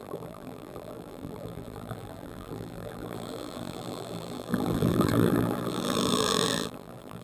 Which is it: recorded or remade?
remade